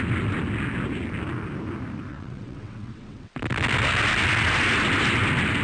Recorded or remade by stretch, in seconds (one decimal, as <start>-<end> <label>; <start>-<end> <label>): 0.0-2.1 recorded; 2.1-3.4 remade; 3.4-5.6 recorded